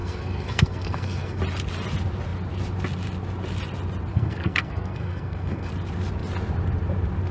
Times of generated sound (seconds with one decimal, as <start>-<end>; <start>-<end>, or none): 0.0-1.4; 4.1-5.7